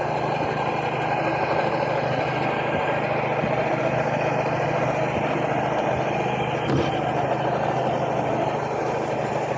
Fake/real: real